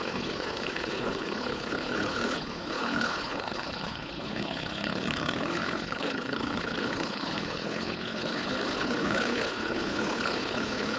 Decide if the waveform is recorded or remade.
remade